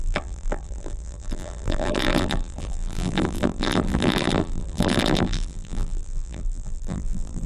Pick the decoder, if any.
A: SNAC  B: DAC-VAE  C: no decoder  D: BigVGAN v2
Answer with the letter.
D